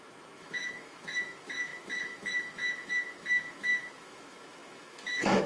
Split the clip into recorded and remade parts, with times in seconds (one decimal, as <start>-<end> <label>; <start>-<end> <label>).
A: 0.0-5.5 remade